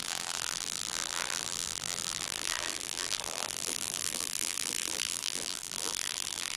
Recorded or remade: remade